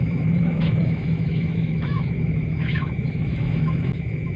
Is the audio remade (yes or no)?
yes